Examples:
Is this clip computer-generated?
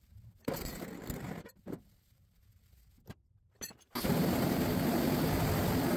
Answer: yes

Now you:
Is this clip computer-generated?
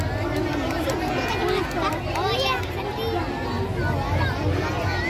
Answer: no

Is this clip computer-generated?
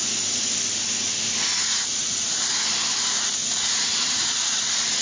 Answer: no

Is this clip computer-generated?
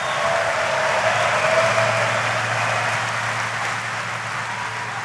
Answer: no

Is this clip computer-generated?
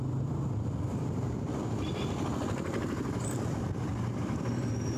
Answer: yes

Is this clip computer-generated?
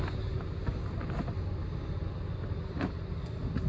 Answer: no